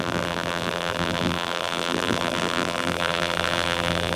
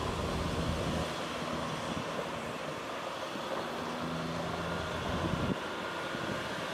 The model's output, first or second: first